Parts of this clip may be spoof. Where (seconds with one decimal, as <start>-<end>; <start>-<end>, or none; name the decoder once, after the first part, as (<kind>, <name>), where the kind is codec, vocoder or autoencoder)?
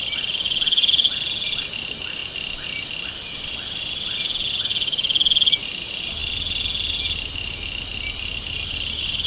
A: 2.2-2.9 (vocoder, BigVGAN v2)